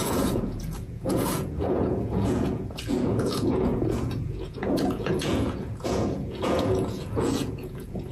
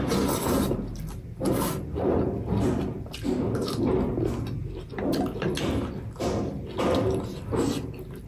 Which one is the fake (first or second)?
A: first